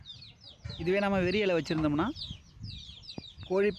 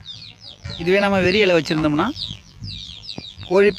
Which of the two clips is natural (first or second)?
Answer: first